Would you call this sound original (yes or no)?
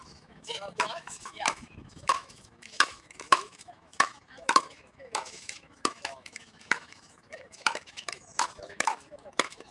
no